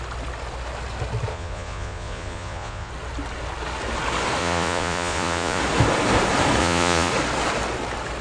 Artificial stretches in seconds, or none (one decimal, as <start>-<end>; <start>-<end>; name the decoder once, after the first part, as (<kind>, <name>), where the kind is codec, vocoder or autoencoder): 1.3-2.9 (vocoder, Vocos); 4.4-5.6; 6.6-7.1